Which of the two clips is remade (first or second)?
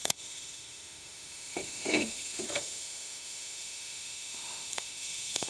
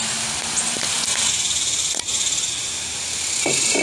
first